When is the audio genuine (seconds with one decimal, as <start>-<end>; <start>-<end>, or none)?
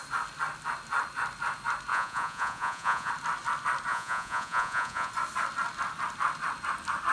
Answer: 0.0-1.9; 3.1-3.9; 5.1-7.1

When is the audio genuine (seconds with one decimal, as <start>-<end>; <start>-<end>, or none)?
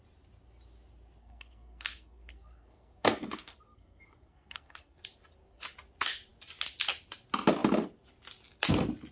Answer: 0.0-1.2; 5.0-9.1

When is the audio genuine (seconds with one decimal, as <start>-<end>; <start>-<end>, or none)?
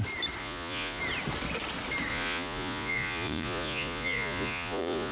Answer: 0.0-0.4; 1.0-2.1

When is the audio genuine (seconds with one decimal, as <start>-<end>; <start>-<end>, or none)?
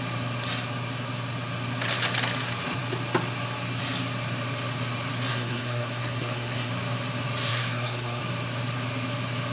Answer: 0.0-5.3; 6.7-7.5; 8.2-9.5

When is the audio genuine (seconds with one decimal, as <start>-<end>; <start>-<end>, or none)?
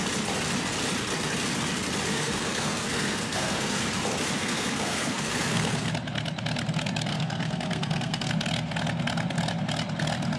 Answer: 0.0-2.1; 3.8-4.4; 5.9-7.1; 8.3-10.4